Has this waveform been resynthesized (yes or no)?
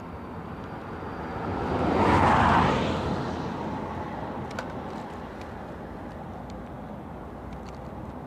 no